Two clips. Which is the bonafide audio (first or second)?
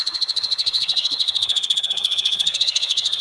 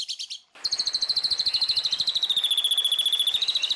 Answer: second